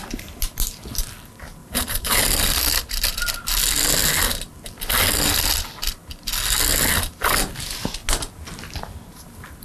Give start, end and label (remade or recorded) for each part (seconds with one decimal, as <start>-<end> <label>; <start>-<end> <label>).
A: 0.0-1.6 recorded; 1.6-2.2 remade; 2.2-9.6 recorded